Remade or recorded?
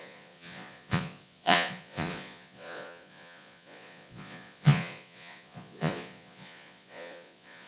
remade